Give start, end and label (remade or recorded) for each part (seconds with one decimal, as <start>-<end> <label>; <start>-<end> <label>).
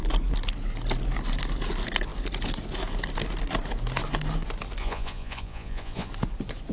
0.0-4.8 recorded; 4.8-6.1 remade; 6.1-6.7 recorded